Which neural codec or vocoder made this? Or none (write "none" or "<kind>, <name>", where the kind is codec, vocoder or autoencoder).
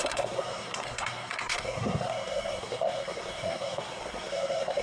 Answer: codec, SNAC